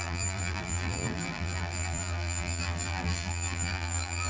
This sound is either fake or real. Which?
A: fake